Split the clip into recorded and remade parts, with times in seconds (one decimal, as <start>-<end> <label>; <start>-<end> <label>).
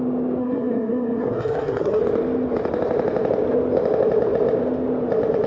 0.0-0.4 recorded; 0.4-2.0 remade; 2.0-5.5 recorded